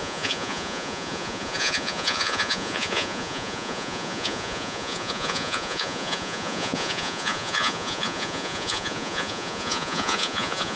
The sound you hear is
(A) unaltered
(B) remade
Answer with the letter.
B